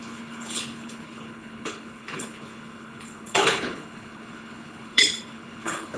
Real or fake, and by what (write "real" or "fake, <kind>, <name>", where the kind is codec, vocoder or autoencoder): fake, codec, HILCodec